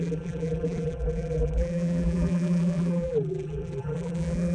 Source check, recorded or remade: remade